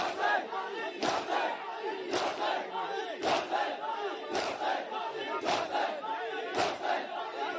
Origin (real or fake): real